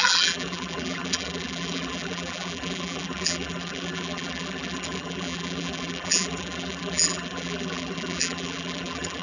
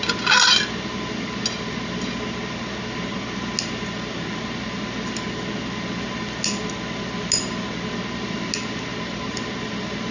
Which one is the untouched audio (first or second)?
second